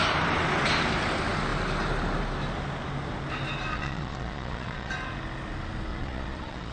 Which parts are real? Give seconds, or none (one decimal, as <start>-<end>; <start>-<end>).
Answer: 0.0-3.7; 4.9-5.9